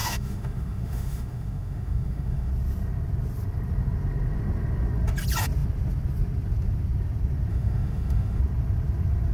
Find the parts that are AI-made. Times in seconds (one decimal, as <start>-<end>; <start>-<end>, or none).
0.0-2.5; 7.5-8.4